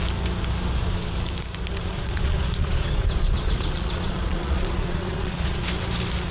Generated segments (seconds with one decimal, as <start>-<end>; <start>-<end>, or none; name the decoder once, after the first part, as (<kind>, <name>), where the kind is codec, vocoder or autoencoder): 1.8-5.6 (vocoder, Vocos)